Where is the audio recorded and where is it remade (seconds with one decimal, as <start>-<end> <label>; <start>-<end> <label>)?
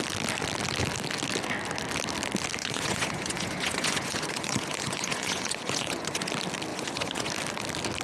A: 0.0-2.6 recorded; 2.6-6.3 remade; 6.3-6.7 recorded; 6.7-7.3 remade; 7.3-8.0 recorded